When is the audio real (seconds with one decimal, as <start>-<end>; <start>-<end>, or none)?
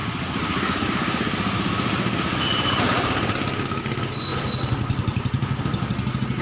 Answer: 3.8-6.4